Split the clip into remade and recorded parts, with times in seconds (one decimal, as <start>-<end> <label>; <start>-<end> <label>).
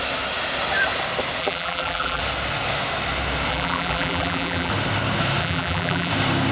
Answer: 0.0-1.4 recorded; 1.4-2.2 remade; 2.2-3.5 recorded; 3.5-4.7 remade; 4.7-5.4 recorded; 5.4-6.1 remade; 6.1-6.5 recorded